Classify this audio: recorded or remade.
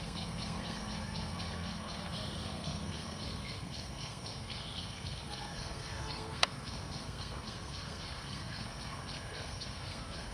remade